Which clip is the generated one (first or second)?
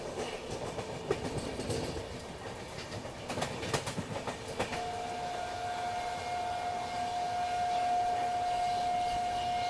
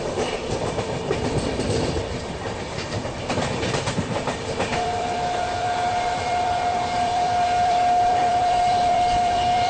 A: second